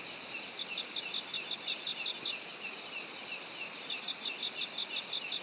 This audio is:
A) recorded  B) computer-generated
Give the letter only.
A